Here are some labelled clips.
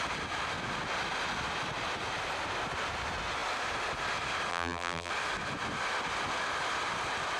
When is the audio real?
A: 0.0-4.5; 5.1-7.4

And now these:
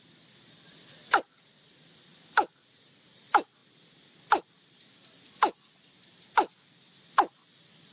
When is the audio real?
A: 0.0-7.9

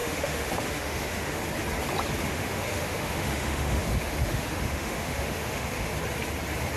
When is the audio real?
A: 1.4-2.2; 5.9-6.8

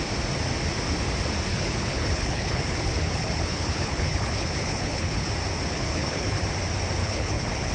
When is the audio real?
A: 0.0-1.5; 5.3-5.7; 6.4-7.0

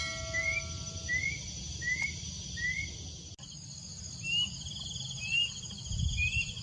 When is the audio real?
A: 0.0-6.6

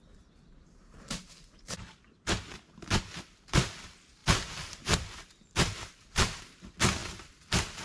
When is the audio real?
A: 0.0-4.2; 6.4-7.8

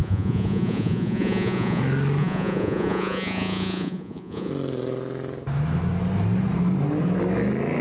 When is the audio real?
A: 1.8-2.2; 4.5-7.8